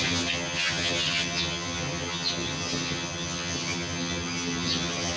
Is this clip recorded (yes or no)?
no